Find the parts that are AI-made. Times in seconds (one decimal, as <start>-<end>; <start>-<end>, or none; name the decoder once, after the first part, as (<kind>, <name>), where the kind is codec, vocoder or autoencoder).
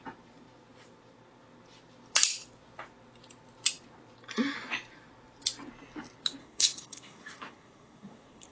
6.4-8.5 (codec, SNAC)